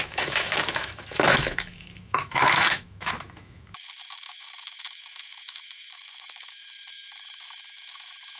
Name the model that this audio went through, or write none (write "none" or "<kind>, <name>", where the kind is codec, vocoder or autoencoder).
autoencoder, DAC-VAE